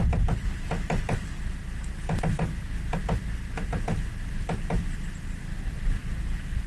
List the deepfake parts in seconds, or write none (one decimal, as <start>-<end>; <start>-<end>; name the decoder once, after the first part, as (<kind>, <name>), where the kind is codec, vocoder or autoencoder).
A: none